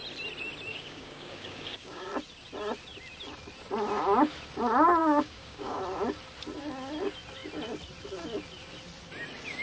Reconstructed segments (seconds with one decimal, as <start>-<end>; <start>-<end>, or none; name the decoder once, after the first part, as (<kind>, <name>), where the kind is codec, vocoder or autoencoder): 0.7-2.1 (codec, DAC); 5.0-5.8